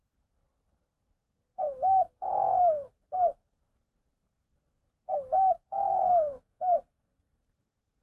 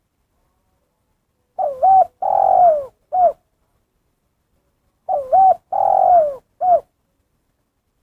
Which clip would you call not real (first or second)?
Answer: first